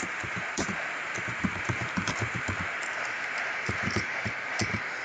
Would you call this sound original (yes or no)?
no